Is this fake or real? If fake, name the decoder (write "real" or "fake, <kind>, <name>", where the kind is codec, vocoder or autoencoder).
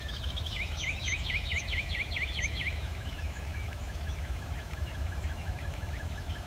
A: fake, autoencoder, DAC-VAE